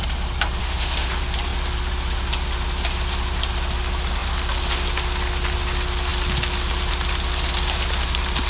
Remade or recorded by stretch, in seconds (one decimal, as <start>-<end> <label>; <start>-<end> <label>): 0.0-0.6 recorded; 0.6-1.1 remade; 1.1-8.5 recorded